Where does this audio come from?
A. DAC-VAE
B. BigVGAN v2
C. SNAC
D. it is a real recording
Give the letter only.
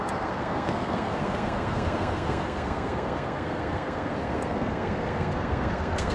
C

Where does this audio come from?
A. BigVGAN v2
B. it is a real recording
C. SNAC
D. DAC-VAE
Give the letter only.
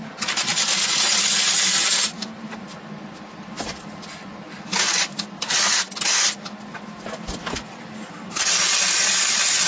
B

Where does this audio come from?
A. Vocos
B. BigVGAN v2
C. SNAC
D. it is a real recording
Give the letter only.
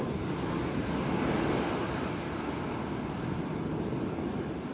D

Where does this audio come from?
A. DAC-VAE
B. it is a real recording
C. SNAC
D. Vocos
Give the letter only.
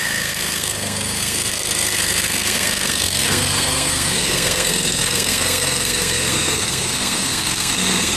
C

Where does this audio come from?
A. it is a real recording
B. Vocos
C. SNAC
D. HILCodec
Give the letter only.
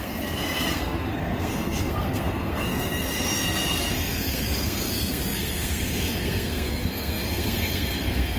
C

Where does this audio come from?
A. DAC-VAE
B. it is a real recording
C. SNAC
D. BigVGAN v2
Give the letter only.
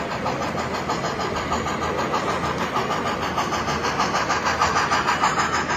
B